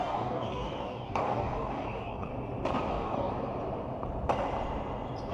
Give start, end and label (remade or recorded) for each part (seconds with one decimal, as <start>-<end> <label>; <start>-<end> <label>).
0.0-2.3 remade; 2.3-2.9 recorded; 2.9-3.3 remade; 3.3-5.3 recorded

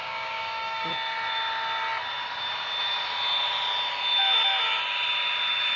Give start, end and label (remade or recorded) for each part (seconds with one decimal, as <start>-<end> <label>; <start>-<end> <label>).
0.0-0.9 remade; 0.9-5.8 recorded